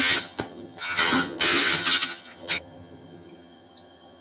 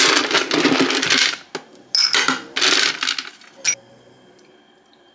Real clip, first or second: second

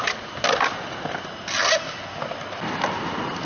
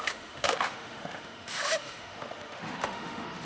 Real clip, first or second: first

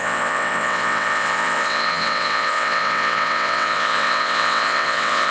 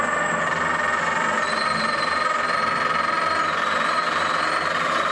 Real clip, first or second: second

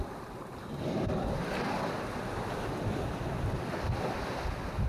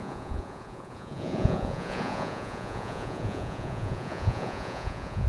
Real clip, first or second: first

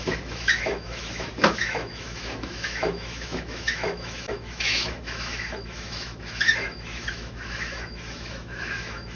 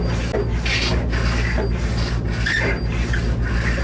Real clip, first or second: second